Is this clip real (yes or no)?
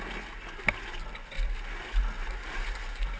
yes